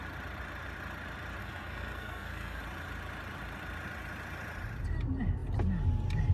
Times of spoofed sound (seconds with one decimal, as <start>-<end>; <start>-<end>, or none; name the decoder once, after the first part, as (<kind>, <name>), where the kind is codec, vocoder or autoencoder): 1.4-2.6 (codec, SNAC)